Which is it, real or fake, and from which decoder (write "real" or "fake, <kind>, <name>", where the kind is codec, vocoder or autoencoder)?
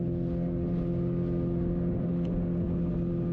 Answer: real